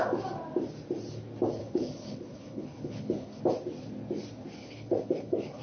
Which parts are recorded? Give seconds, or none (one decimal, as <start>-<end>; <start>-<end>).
0.0-1.6; 3.4-4.6